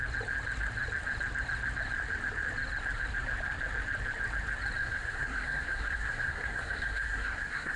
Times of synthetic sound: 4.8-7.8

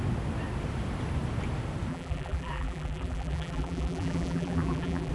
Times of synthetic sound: 1.9-5.1